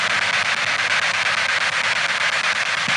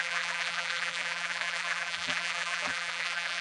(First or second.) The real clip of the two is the first